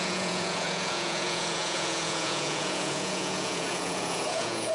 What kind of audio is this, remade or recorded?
remade